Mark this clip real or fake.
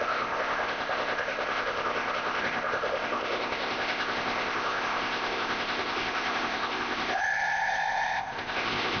fake